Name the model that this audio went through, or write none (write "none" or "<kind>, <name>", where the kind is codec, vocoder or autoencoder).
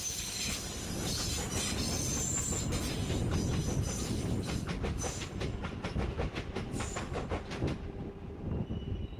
none